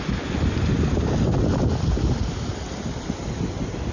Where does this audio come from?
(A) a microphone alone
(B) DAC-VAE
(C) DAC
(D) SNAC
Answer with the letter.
A